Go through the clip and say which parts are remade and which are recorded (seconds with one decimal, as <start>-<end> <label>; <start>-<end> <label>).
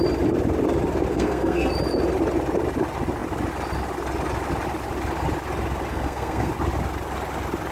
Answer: 0.0-1.1 recorded; 1.1-1.7 remade; 1.7-5.9 recorded; 5.9-6.5 remade; 6.5-7.7 recorded